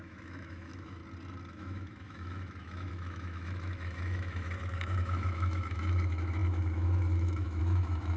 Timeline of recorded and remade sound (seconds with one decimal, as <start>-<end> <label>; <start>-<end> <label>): 0.0-1.0 remade; 1.0-1.5 recorded; 1.5-8.2 remade